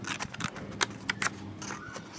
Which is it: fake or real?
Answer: real